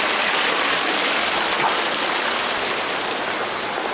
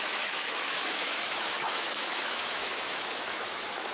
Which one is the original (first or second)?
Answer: first